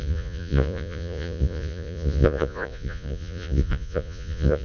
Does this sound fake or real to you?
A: fake